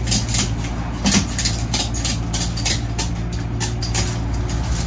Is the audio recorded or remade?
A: recorded